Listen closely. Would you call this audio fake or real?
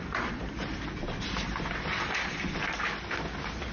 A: real